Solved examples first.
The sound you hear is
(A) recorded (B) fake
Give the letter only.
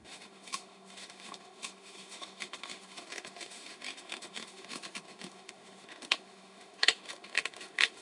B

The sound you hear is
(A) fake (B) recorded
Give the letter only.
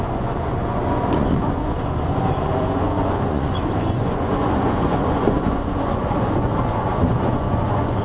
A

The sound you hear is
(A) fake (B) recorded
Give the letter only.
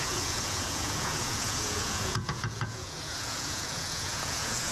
A